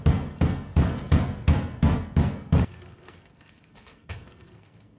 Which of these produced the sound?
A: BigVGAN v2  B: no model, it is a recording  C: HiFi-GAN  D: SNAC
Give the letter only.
D